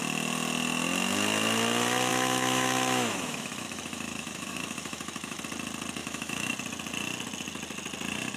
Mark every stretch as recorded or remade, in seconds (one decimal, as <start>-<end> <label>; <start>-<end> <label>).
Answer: 0.0-2.1 recorded; 2.1-5.4 remade; 5.4-6.0 recorded; 6.0-6.5 remade; 6.5-8.4 recorded